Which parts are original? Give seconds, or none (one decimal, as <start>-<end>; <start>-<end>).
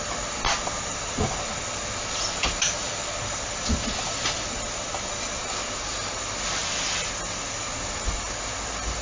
0.0-2.8; 5.4-6.6; 8.1-9.0